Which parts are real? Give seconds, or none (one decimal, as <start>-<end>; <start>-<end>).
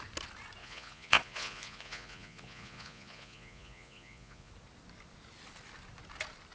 0.0-0.6; 4.5-6.5